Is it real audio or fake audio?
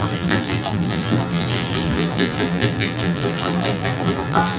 fake